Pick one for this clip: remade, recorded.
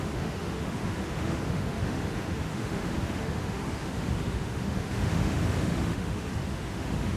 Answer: remade